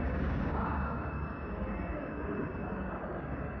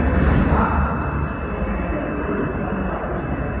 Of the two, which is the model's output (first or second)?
first